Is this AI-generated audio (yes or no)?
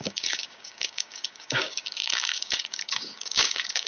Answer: yes